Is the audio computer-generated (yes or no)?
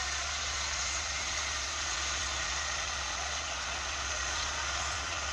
yes